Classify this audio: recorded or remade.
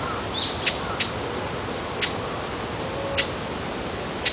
recorded